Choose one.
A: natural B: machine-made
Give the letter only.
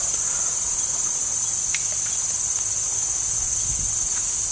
A